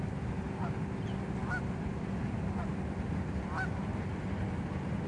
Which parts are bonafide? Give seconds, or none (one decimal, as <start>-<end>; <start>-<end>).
0.0-5.1